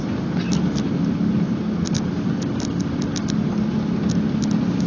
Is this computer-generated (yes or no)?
no